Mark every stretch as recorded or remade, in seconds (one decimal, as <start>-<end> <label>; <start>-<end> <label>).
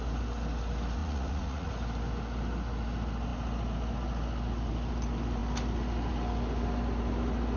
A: 0.0-1.0 recorded; 1.0-1.7 remade; 1.7-7.6 recorded